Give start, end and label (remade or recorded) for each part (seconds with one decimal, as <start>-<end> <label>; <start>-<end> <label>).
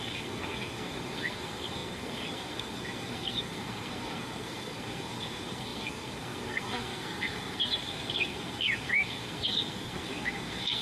0.0-10.8 remade